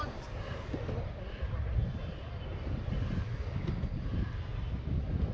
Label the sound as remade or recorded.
recorded